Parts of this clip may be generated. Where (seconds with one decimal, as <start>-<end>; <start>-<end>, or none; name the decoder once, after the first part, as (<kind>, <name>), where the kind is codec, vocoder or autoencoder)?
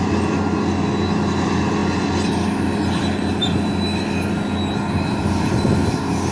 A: none